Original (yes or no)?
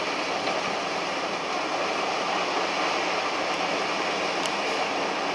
yes